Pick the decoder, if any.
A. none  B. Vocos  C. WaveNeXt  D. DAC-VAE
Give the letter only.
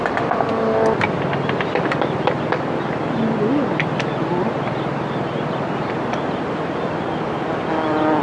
A